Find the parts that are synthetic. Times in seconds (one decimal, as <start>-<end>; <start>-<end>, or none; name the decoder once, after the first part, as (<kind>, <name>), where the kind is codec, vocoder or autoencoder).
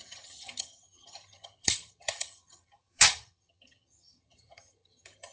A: 0.0-5.3 (vocoder, HiFi-GAN)